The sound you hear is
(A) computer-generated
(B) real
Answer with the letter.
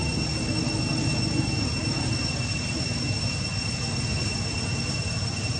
B